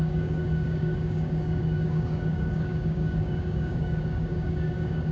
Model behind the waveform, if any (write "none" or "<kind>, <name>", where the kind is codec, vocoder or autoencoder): codec, DAC